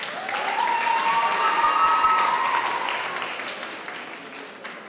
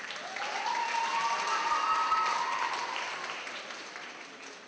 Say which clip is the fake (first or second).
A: second